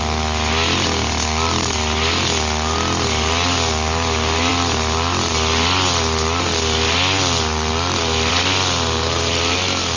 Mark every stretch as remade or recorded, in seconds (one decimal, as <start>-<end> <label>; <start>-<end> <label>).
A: 0.0-10.0 recorded